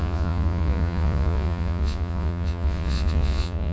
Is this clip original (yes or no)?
no